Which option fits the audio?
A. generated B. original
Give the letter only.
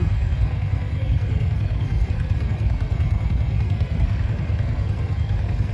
A